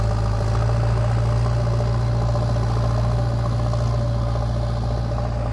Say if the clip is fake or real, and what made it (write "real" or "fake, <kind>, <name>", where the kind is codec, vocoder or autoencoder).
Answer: real